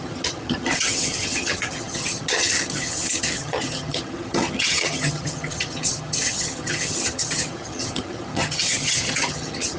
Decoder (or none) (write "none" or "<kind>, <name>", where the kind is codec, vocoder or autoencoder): vocoder, HiFi-GAN